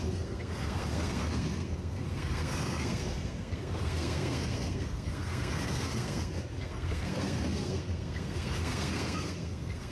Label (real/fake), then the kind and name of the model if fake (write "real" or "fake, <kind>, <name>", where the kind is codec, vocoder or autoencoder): fake, codec, SNAC